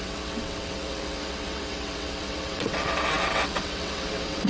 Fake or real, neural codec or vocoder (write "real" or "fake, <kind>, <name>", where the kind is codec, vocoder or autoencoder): fake, vocoder, WaveNeXt